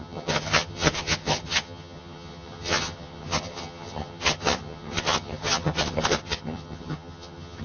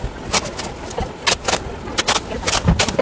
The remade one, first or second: first